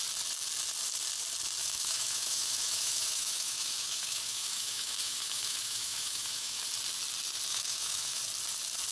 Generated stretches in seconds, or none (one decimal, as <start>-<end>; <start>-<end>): 1.6-6.6; 7.5-8.2